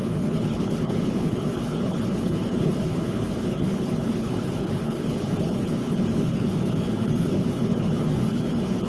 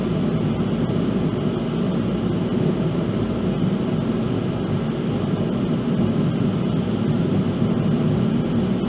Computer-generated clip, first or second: first